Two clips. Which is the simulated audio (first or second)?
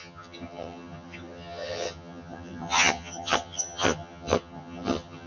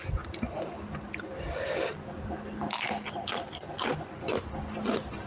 first